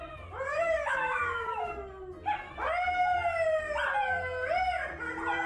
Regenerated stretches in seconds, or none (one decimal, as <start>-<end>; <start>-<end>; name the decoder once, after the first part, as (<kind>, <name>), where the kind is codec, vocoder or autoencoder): 0.5-1.7 (autoencoder, DAC-VAE)